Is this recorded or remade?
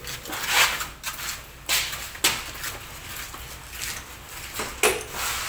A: recorded